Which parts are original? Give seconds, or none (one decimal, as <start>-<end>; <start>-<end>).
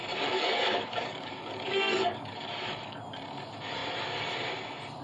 3.0-5.0